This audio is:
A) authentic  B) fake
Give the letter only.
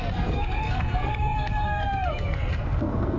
B